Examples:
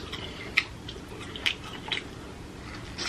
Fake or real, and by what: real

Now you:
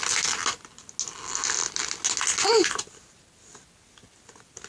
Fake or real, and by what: real